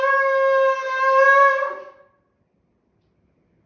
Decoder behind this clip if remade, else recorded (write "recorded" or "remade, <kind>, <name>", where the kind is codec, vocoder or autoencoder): recorded